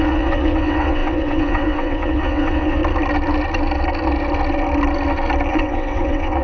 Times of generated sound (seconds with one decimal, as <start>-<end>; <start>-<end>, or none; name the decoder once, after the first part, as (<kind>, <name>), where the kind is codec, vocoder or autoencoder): 0.0-2.8 (vocoder, WaveNeXt); 5.5-6.4